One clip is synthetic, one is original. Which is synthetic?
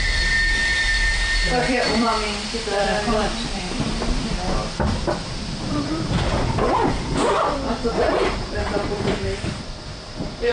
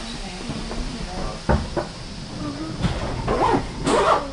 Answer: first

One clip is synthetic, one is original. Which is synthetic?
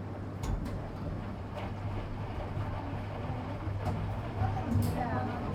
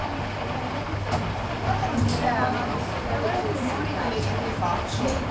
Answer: second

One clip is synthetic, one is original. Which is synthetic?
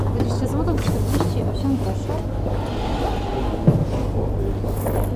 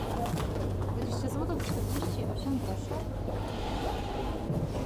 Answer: second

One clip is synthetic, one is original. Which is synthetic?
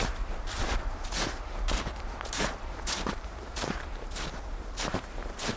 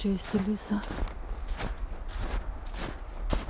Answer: first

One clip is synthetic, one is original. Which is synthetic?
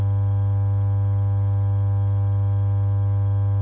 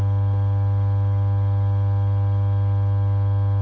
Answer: first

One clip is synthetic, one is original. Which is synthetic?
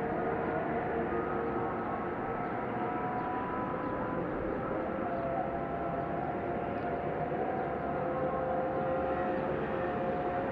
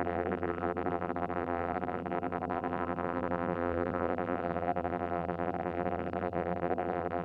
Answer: second